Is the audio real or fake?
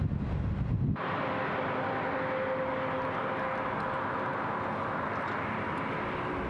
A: real